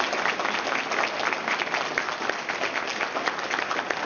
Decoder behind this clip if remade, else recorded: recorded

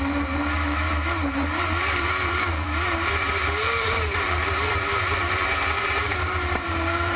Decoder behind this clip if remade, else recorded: remade, vocoder, BigVGAN v2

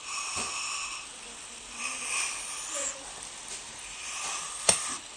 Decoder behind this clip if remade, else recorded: recorded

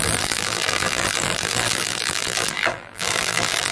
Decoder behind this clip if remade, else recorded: remade, vocoder, BigVGAN v2